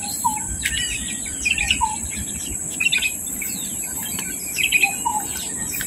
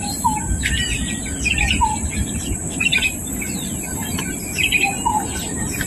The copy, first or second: first